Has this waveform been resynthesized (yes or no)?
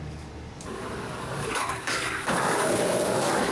yes